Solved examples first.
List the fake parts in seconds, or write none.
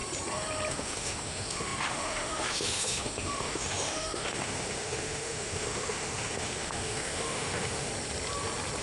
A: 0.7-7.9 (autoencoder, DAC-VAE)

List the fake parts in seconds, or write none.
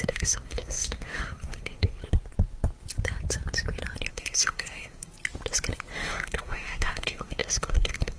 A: 0.0-2.0 (codec, SNAC); 4.1-5.1; 5.9-8.2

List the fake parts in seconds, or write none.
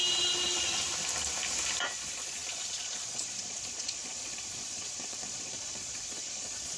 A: 1.8-6.8 (vocoder, Vocos)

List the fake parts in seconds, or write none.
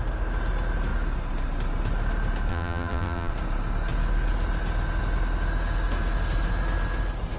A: 2.5-3.3 (vocoder, BigVGAN v2)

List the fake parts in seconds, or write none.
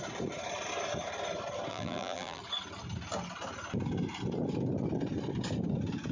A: 1.7-2.4 (vocoder, BigVGAN v2)